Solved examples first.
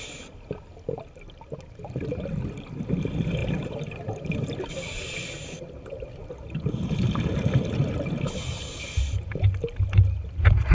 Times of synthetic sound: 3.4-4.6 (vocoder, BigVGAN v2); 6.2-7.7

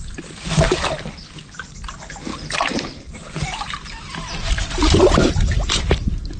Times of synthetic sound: 0.0-6.4 (vocoder, BigVGAN v2)

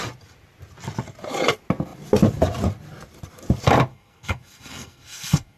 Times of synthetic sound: 3.9-5.6 (codec, SNAC)

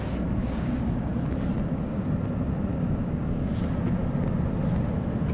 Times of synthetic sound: 0.4-1.1 (codec, DAC); 2.7-3.6

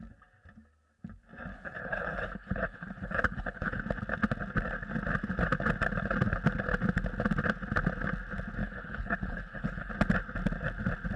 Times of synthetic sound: 1.5-3.8 (codec, HILCodec); 8.6-9.9

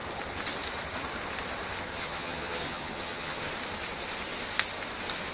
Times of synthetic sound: 1.9-3.5 (vocoder, HiFi-GAN)

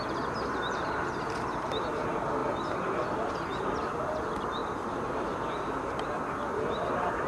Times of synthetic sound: 4.6-5.9 (vocoder, BigVGAN v2)

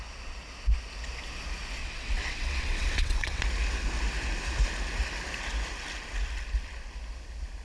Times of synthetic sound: 1.8-3.4 (vocoder, WaveNeXt)